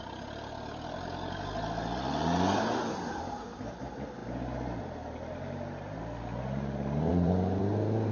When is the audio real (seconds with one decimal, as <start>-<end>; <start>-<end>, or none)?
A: 0.0-4.2; 4.8-7.1; 7.6-8.1